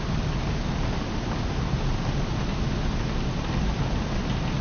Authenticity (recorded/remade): recorded